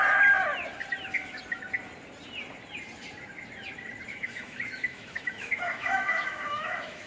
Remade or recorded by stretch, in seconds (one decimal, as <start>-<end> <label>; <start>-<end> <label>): 0.0-4.1 recorded; 4.1-7.1 remade